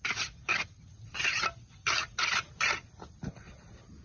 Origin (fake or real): real